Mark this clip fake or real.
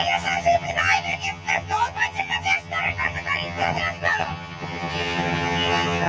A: fake